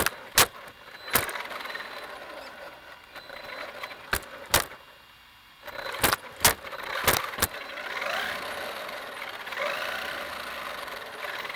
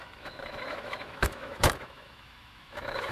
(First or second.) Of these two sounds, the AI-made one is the second